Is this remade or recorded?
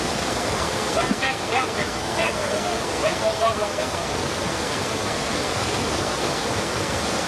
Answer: remade